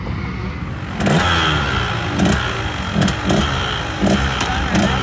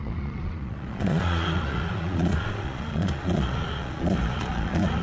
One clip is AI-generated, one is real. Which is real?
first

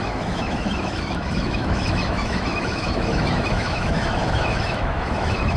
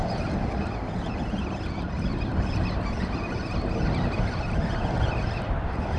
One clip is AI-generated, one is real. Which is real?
second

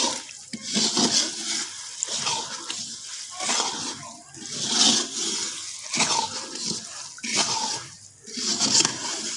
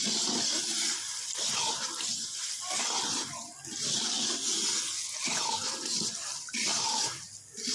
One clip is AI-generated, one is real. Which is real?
first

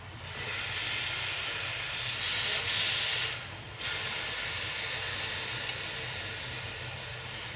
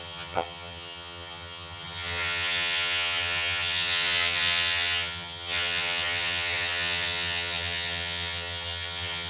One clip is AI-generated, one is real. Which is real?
first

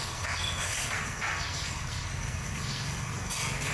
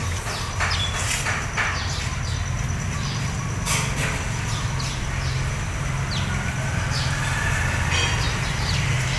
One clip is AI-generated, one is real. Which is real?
second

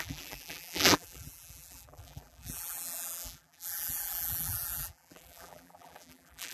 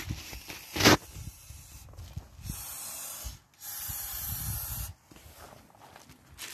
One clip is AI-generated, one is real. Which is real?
second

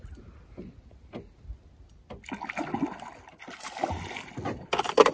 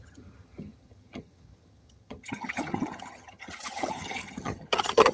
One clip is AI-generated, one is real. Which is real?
first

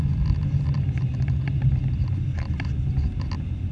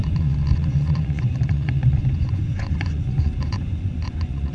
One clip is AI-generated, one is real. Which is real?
first